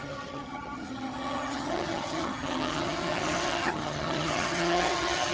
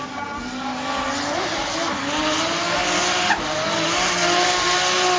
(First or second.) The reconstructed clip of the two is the first